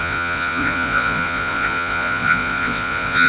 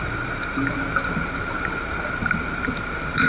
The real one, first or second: second